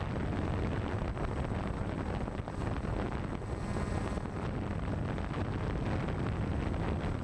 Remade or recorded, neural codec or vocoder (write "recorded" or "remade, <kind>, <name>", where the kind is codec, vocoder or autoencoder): recorded